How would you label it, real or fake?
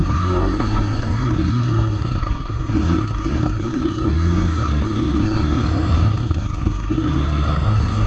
fake